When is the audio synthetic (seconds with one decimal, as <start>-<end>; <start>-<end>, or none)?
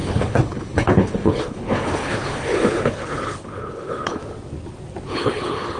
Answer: 0.0-4.2; 5.1-5.8